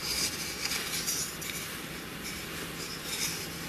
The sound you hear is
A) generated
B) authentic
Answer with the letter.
B